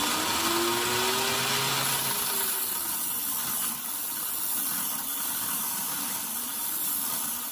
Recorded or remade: recorded